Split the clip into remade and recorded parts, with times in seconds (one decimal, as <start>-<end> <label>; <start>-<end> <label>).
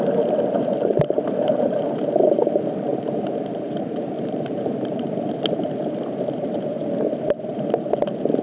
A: 0.0-0.9 recorded; 0.9-1.6 remade; 1.6-2.9 recorded; 2.9-5.4 remade; 5.4-8.4 recorded